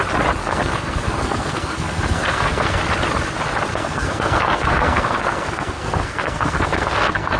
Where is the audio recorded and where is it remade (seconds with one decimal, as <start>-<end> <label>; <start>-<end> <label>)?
0.0-0.4 recorded; 0.4-2.8 remade; 2.8-3.7 recorded; 3.7-7.4 remade